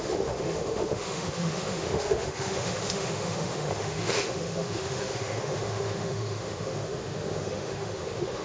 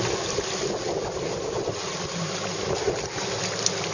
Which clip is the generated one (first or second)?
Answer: first